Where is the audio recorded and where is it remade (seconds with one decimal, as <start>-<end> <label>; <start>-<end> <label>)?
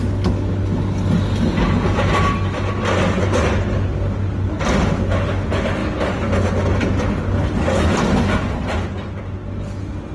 0.0-10.1 recorded